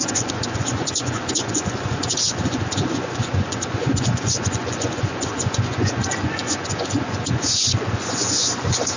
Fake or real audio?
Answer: fake